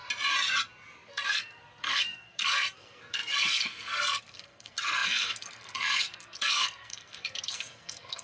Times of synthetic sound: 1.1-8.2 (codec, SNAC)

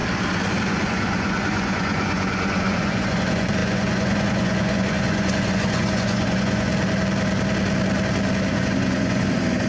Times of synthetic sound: 0.7-6.7 (vocoder, Vocos); 8.5-9.7